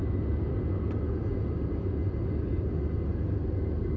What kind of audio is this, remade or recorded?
recorded